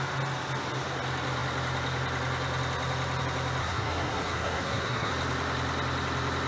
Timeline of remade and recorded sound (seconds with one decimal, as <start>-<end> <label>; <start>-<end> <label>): 0.0-3.6 recorded; 3.6-5.1 remade; 5.1-6.5 recorded